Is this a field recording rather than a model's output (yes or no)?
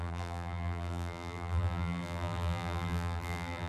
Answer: no